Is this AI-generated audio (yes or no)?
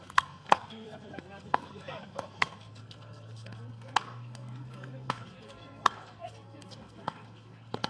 yes